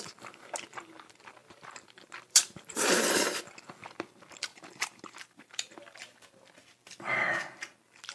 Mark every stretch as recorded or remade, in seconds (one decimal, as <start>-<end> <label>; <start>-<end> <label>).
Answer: 0.0-1.4 recorded; 1.4-3.3 remade; 3.3-4.5 recorded; 4.5-5.5 remade; 5.5-8.1 recorded